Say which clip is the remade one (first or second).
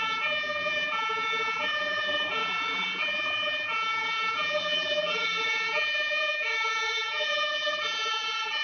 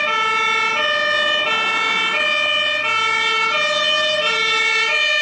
first